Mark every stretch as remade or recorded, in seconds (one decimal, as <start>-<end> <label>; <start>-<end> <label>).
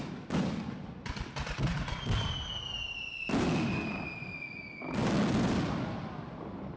0.0-6.8 recorded